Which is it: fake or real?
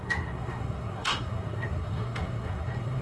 fake